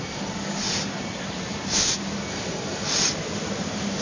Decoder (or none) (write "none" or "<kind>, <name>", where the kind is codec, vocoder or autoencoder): none